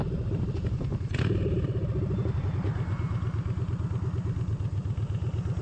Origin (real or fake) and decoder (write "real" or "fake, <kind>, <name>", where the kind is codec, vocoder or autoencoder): real